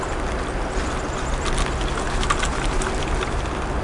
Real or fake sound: real